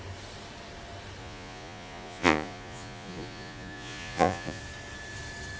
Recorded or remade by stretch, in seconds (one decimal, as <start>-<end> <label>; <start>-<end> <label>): 0.0-1.2 recorded; 1.2-4.6 remade; 4.6-5.6 recorded